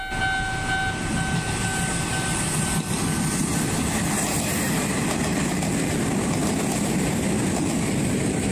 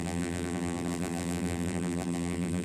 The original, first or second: first